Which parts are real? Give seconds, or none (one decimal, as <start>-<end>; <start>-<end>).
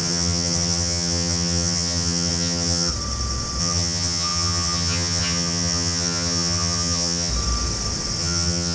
2.9-3.6; 7.3-8.2